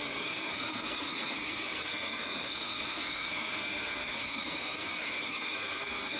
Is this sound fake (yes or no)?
yes